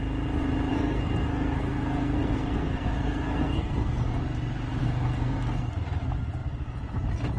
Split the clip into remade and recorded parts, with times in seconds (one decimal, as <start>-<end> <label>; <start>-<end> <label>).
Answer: 0.0-0.7 recorded; 0.7-4.2 remade; 4.2-4.8 recorded; 4.8-5.7 remade; 5.7-7.4 recorded